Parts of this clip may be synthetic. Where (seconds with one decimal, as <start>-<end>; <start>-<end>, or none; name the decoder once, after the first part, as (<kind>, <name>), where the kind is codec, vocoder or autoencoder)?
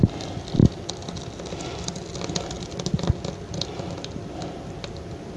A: none